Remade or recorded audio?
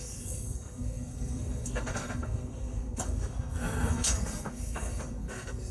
remade